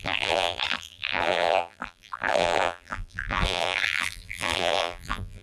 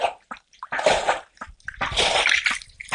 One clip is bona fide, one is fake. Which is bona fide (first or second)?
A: second